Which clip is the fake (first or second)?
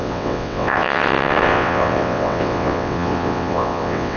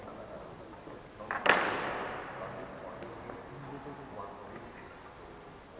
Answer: first